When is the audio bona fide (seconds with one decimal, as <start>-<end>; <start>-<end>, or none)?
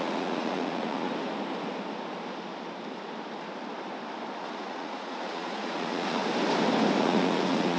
1.1-4.4; 6.2-7.0